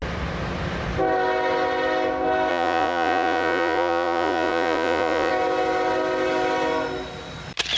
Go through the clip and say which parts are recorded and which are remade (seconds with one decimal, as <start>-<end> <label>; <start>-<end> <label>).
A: 0.0-2.5 recorded; 2.5-5.3 remade; 5.3-7.8 recorded